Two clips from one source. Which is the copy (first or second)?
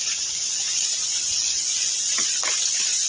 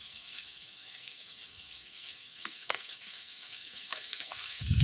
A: second